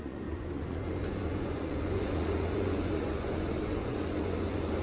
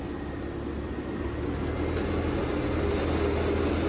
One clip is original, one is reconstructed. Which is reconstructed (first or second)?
first